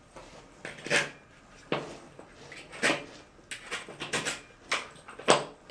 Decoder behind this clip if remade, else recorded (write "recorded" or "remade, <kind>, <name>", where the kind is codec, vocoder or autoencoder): recorded